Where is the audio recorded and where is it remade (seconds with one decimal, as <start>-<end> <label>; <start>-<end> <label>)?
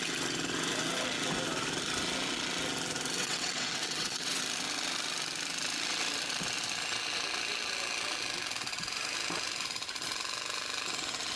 0.0-3.2 recorded; 3.2-4.4 remade; 4.4-11.4 recorded